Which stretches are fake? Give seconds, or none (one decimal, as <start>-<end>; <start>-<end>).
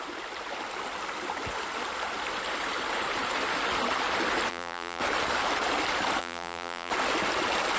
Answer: 4.5-5.0; 6.2-6.9